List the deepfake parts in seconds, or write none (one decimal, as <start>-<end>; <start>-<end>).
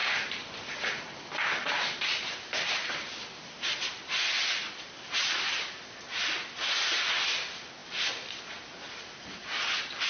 none